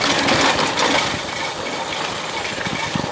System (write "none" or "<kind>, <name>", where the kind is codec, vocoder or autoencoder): none